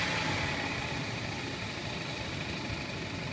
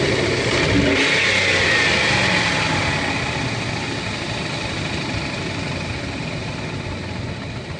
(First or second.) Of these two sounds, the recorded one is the second